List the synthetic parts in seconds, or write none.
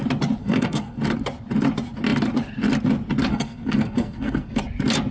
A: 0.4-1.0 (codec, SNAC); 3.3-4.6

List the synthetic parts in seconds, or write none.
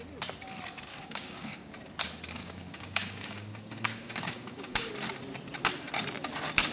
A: 0.9-1.7 (codec, DAC); 2.4-4.9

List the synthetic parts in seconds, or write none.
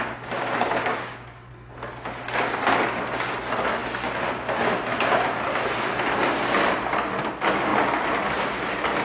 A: 0.8-1.5 (codec, DAC)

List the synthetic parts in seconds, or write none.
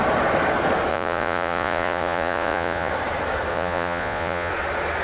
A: 0.9-2.9 (vocoder, Vocos); 3.5-4.5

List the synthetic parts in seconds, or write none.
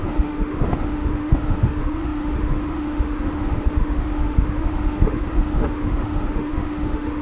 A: 0.0-7.2 (autoencoder, DAC-VAE)